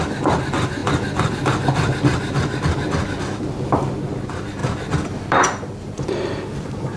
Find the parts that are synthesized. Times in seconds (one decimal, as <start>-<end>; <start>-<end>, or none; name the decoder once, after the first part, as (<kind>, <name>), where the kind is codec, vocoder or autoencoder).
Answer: 4.6-6.1 (vocoder, BigVGAN v2)